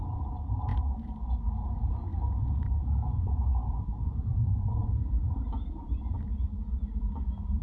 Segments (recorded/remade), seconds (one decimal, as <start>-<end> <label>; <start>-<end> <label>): 0.0-7.6 remade